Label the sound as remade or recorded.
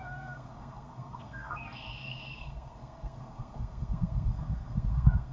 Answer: remade